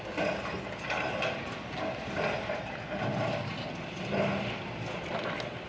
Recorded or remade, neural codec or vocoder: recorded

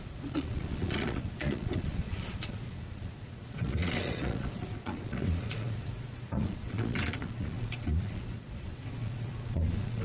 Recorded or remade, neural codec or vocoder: remade, vocoder, Vocos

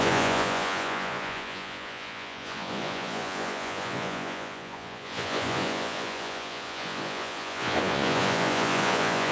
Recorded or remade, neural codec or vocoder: remade, vocoder, Vocos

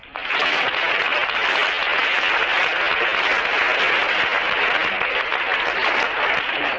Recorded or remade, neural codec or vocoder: recorded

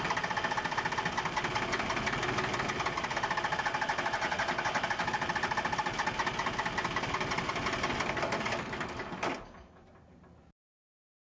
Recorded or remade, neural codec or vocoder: recorded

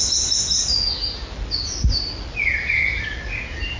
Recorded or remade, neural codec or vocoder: recorded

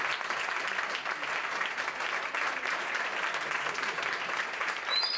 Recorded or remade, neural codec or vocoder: recorded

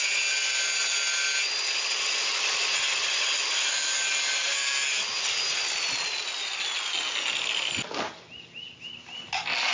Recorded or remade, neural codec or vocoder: recorded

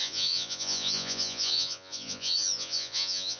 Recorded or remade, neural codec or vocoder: remade, vocoder, Vocos